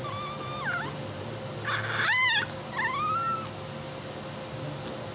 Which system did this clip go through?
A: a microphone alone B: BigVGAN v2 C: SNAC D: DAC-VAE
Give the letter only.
A